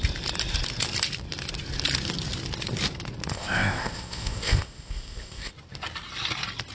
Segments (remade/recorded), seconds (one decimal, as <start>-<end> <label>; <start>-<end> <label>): 0.0-3.3 recorded; 3.3-5.5 remade; 5.5-6.7 recorded